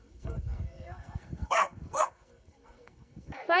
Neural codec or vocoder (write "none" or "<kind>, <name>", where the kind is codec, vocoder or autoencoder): codec, SNAC